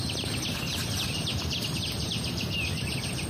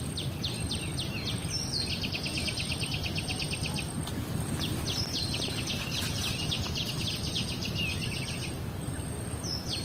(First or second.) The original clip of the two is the second